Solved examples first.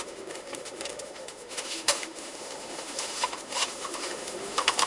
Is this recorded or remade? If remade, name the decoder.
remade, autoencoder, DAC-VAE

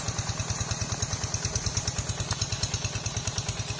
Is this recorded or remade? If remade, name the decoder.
recorded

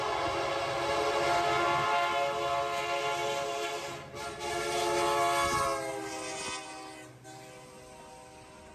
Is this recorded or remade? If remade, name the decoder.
recorded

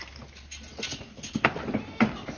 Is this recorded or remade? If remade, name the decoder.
recorded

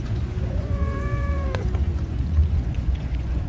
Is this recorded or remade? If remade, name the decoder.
remade, vocoder, Vocos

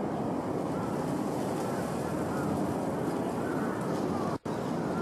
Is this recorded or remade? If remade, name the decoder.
recorded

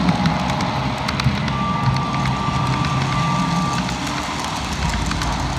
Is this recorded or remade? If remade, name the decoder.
recorded